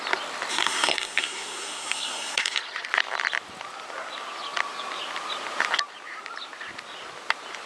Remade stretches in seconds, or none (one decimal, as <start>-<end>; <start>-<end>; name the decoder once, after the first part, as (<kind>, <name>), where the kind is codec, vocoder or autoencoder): 0.5-2.6 (codec, SNAC)